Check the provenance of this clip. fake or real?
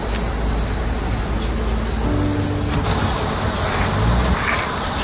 real